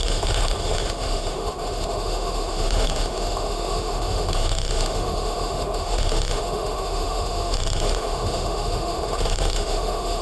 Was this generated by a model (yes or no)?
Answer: yes